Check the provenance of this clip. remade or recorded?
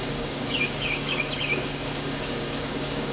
remade